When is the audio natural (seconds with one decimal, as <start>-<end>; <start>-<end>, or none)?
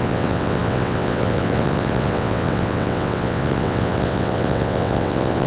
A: none